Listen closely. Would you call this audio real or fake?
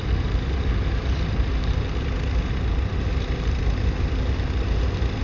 real